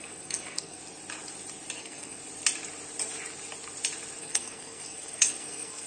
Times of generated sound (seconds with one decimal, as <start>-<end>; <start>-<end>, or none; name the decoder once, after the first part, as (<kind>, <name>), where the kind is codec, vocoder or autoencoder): 0.0-0.8 (codec, SNAC); 1.8-2.2; 4.2-5.9